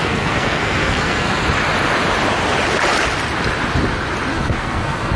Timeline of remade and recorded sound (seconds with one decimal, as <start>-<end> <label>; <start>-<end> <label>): 0.0-1.4 remade; 1.4-4.3 recorded; 4.3-5.2 remade